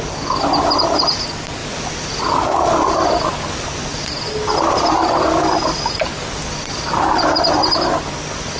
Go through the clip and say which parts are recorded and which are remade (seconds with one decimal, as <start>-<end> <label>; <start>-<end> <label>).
0.0-8.6 recorded